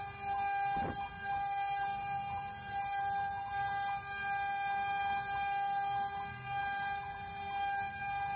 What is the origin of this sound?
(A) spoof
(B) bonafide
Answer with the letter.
B